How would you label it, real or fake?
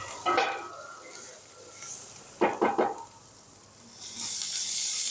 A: real